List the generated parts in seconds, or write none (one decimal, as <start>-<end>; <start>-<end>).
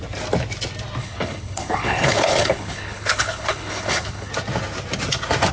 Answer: 1.0-4.3